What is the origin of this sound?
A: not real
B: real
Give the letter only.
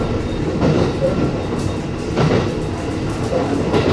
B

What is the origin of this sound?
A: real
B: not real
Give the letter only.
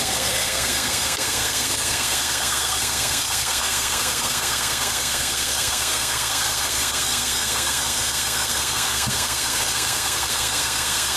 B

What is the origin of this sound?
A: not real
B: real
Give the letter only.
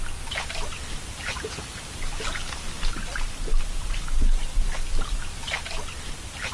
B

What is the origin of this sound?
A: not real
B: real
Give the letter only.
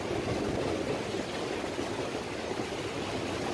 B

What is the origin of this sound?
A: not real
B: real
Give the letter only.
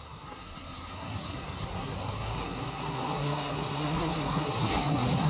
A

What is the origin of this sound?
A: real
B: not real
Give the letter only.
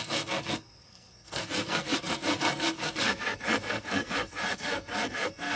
B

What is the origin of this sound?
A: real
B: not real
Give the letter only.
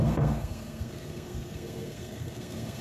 B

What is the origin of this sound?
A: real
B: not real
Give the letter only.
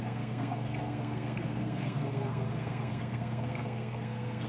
B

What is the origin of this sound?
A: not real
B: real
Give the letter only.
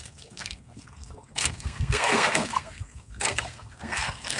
A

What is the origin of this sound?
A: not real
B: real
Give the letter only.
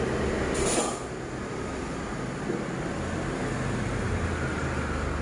B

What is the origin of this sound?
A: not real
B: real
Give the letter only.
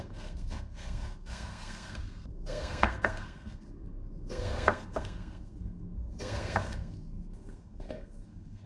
A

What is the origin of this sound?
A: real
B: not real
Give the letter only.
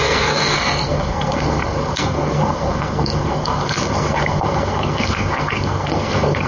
B